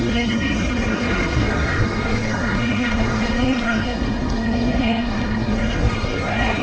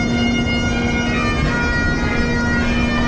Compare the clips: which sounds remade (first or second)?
first